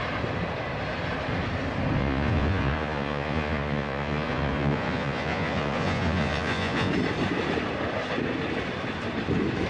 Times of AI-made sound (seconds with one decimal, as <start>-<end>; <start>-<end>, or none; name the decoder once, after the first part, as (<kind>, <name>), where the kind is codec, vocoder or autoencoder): 2.0-6.9 (vocoder, Vocos)